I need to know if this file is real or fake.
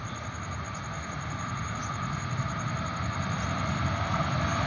real